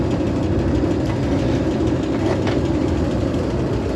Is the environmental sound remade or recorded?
recorded